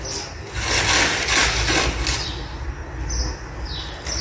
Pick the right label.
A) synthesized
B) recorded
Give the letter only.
B